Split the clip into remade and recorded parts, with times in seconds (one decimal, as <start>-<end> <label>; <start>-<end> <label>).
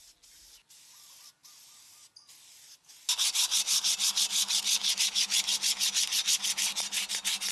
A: 0.0-7.5 recorded